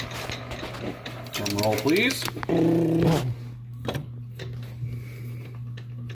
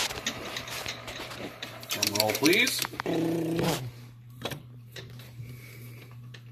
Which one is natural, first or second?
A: first